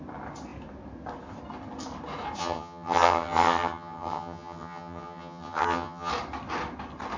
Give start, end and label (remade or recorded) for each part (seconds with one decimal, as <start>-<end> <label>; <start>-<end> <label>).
0.0-2.4 recorded; 2.4-6.1 remade; 6.1-7.2 recorded